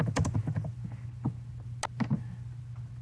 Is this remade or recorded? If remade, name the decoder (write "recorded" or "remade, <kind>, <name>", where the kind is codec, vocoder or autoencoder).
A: recorded